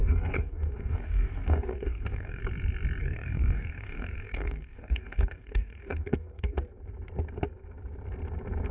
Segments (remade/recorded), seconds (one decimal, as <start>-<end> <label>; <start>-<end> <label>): 0.0-2.4 remade; 2.4-3.0 recorded; 3.0-6.6 remade; 6.6-8.7 recorded